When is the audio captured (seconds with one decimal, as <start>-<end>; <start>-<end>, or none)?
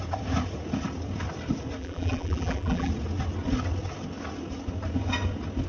0.0-1.8; 2.9-5.7